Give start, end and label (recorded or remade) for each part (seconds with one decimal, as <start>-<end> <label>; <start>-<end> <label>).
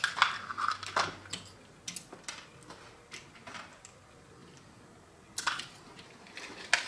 0.0-6.9 recorded